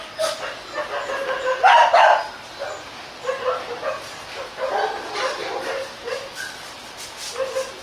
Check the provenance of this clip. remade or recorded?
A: recorded